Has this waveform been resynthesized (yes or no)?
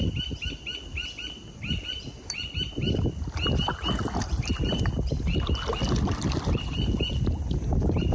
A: no